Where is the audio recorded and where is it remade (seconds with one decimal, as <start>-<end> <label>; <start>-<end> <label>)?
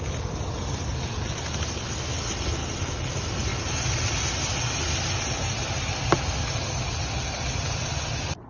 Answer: 0.0-8.5 recorded